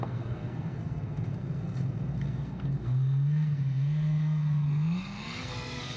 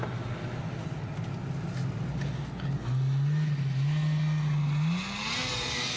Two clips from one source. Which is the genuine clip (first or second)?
second